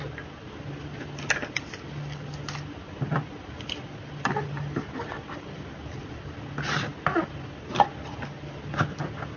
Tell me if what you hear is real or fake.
real